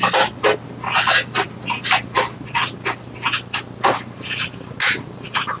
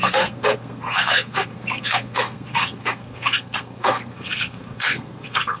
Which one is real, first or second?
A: first